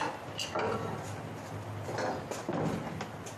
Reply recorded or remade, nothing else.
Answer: recorded